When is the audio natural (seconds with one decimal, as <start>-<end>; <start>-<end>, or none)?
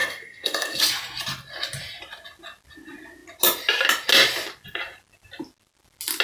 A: 0.8-6.2